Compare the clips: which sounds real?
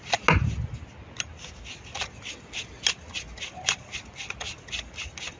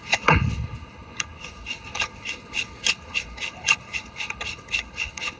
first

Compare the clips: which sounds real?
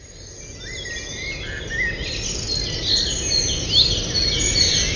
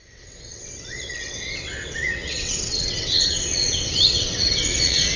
first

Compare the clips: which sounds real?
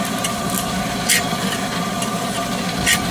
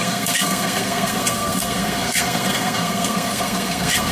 first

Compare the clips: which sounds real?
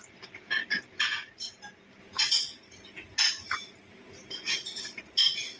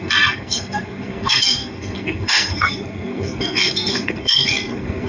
first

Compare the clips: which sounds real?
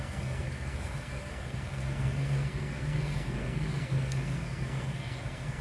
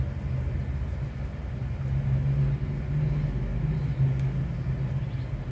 second